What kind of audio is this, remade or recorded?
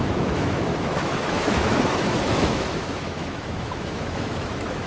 remade